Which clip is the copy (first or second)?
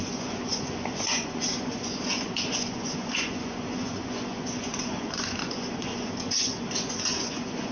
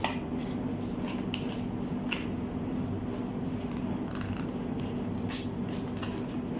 first